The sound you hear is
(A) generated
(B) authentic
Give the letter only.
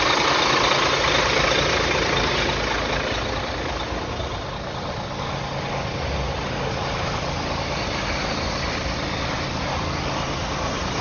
B